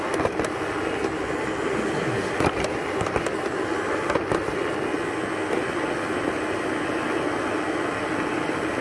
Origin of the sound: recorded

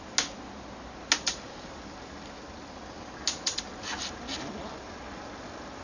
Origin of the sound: recorded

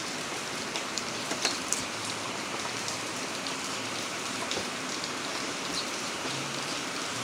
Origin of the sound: remade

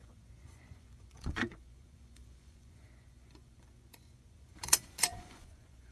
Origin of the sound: remade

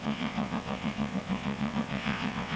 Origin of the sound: remade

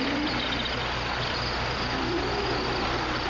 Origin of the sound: recorded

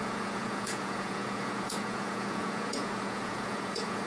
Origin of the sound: remade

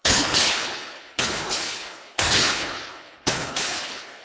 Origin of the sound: remade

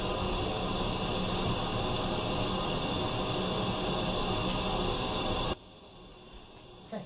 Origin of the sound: recorded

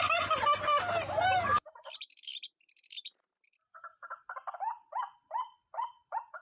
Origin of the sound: remade